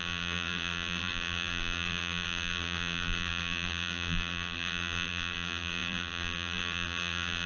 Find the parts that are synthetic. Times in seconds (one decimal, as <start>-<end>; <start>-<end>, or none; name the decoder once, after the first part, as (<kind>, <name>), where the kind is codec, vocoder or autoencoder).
0.0-7.5 (vocoder, BigVGAN v2)